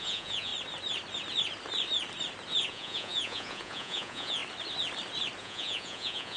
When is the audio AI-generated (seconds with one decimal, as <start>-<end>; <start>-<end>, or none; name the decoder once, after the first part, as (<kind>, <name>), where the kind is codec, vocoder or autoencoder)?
0.0-0.5 (vocoder, Vocos); 2.7-4.4; 5.4-6.4